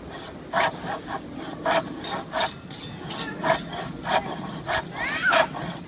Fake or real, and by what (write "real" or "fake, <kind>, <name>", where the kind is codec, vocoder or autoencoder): real